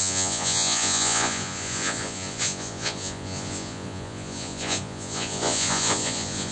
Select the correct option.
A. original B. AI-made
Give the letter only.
B